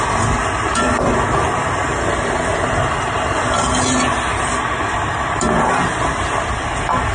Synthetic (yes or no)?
no